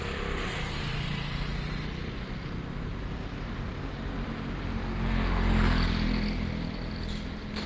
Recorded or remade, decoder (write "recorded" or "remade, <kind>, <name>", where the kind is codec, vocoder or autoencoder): recorded